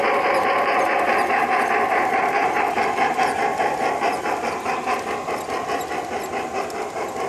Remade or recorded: recorded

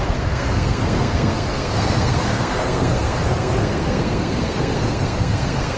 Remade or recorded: remade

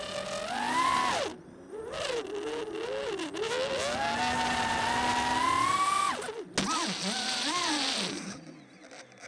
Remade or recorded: recorded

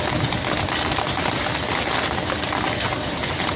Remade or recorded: recorded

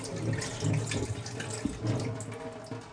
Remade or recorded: recorded